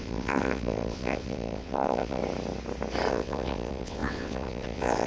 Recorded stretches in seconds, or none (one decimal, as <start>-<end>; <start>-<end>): 2.2-3.1